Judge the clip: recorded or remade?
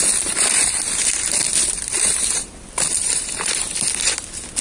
remade